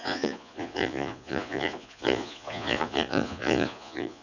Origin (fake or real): fake